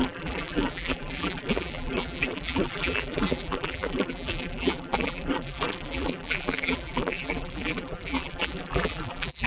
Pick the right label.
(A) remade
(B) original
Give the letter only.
A